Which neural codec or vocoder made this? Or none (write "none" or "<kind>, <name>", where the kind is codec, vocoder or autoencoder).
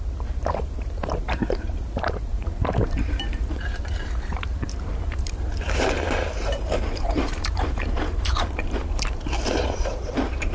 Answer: vocoder, BigVGAN v2